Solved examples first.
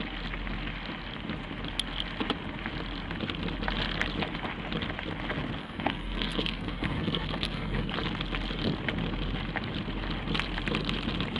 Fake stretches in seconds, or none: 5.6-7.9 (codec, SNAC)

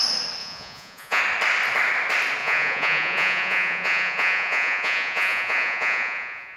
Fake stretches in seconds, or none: 0.4-1.2 (vocoder, Vocos); 2.4-6.6

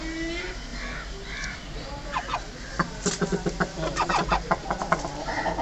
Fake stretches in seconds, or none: none

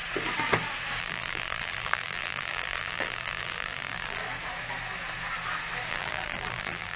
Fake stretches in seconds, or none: 1.0-4.2 (vocoder, BigVGAN v2); 5.9-7.0

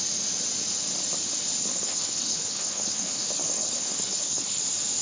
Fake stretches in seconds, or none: 1.6-4.6 (codec, HILCodec)

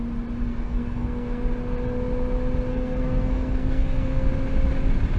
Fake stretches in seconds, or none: 0.4-1.4 (codec, SNAC); 2.7-4.3